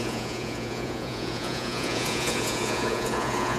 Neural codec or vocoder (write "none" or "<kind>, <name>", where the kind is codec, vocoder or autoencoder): vocoder, Vocos